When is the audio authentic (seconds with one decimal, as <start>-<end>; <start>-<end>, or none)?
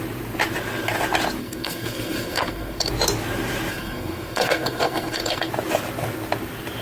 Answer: 0.0-1.4; 2.9-3.7; 5.5-6.8